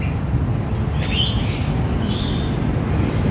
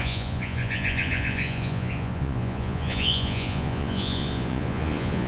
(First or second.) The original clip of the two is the first